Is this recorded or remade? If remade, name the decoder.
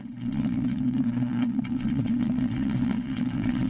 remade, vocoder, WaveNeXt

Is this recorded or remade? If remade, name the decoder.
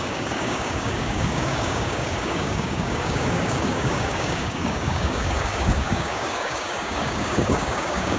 remade, codec, DAC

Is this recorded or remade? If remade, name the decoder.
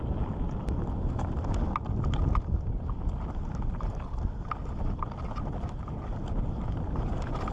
recorded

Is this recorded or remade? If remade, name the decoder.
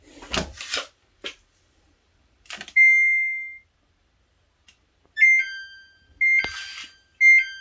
recorded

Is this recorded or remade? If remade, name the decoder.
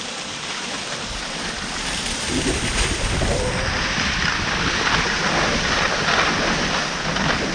recorded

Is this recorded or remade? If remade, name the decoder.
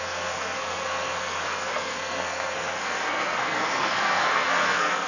remade, codec, SNAC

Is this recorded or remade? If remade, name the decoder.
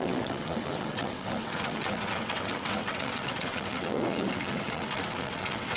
remade, vocoder, WaveNeXt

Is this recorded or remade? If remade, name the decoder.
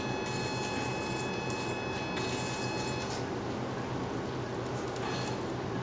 recorded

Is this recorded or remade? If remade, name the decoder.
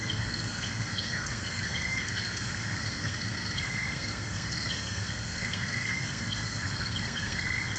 remade, codec, SNAC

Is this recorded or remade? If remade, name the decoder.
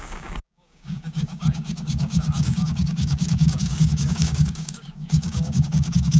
remade, codec, DAC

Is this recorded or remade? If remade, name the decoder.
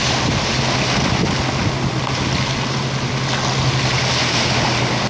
recorded